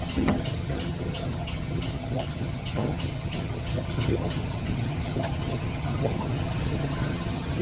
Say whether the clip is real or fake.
fake